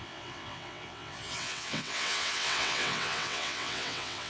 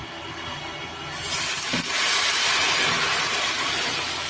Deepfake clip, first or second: first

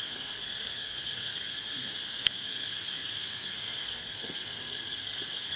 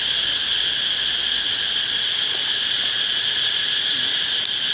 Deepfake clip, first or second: first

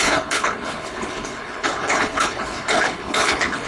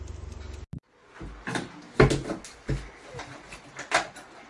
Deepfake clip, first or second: first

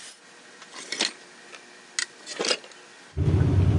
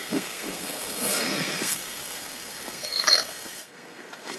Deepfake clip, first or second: second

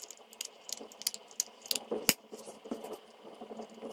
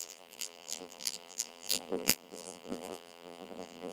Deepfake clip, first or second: second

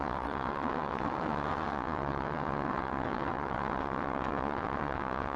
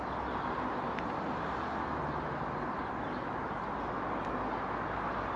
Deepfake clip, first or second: first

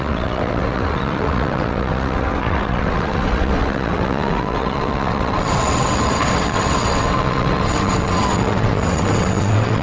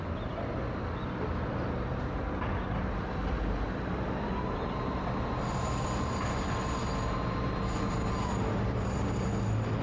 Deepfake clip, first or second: first